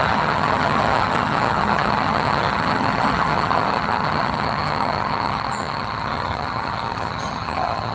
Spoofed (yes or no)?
yes